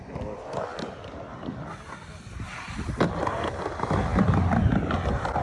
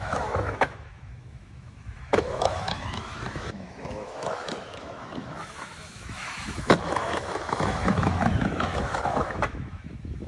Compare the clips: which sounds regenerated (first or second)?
second